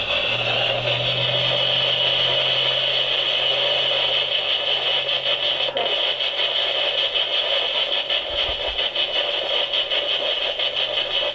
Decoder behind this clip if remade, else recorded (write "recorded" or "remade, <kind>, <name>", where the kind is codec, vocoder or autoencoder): recorded